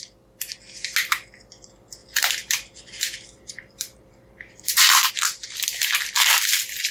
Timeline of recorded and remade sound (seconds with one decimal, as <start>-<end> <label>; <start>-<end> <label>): 0.0-2.0 recorded; 2.0-5.1 remade; 5.1-6.9 recorded